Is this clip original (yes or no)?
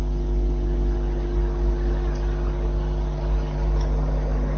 yes